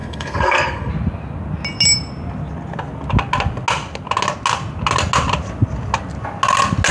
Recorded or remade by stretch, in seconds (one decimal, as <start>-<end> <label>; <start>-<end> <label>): 0.0-0.9 remade; 0.9-6.9 recorded